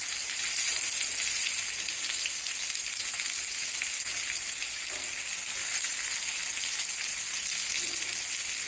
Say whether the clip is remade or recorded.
recorded